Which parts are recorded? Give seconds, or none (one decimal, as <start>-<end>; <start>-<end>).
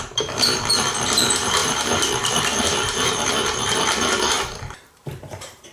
none